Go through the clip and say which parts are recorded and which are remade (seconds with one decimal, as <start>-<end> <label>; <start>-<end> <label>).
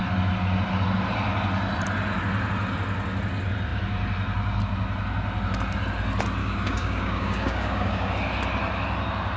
0.0-6.4 recorded; 6.4-8.1 remade; 8.1-9.4 recorded